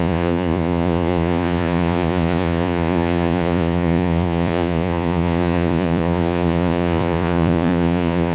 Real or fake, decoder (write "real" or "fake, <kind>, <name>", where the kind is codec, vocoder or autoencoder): fake, vocoder, Vocos